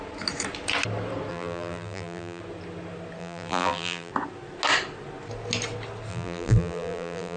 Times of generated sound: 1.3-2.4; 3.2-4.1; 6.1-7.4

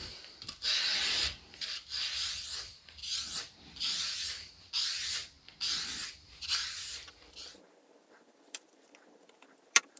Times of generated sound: 0.7-10.0

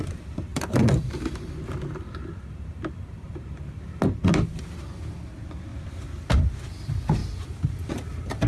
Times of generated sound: 0.5-3.2